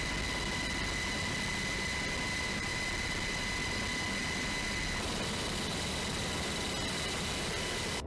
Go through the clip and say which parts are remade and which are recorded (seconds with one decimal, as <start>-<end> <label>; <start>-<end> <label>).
0.0-4.2 recorded; 4.2-8.1 remade

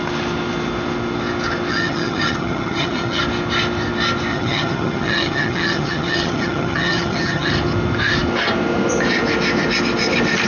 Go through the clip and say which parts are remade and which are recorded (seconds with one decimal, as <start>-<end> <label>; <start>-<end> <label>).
0.0-1.7 recorded; 1.7-3.2 remade; 3.2-4.3 recorded; 4.3-7.5 remade; 7.5-10.5 recorded